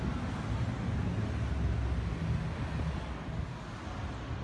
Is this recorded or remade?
recorded